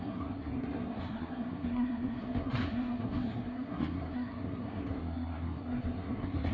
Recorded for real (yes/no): no